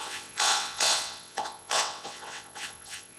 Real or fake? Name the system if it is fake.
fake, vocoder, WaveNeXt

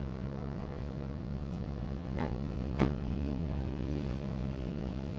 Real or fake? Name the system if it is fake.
fake, vocoder, WaveNeXt